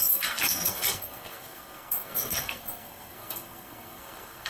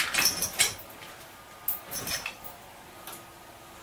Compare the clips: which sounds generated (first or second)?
first